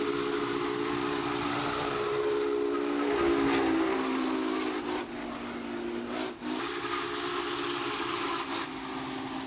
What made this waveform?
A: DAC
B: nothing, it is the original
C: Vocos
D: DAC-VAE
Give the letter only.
B